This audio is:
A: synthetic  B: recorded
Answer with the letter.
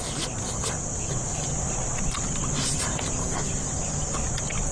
B